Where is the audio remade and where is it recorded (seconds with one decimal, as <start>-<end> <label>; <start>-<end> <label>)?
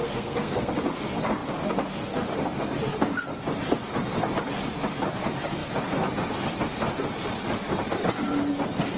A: 0.0-0.7 remade; 0.7-9.0 recorded